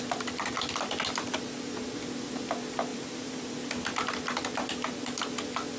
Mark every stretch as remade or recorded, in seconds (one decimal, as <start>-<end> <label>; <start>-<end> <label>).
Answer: 0.0-2.9 recorded; 2.9-3.5 remade; 3.5-5.8 recorded